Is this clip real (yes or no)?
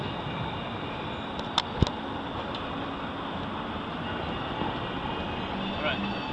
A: yes